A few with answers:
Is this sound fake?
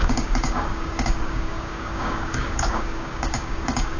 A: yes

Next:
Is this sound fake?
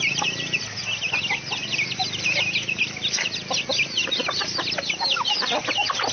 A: no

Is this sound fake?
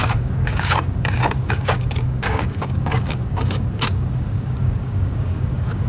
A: yes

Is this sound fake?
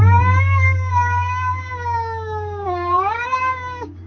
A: yes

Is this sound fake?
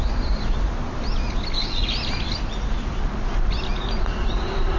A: no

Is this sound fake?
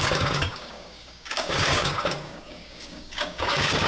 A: yes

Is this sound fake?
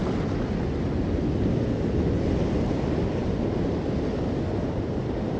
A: no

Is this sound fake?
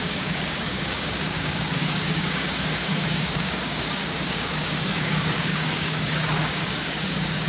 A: yes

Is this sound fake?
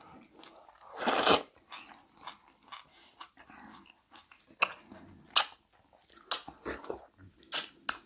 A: no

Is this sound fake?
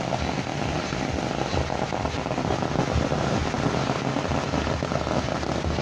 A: no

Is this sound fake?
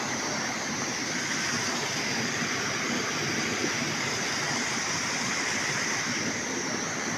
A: no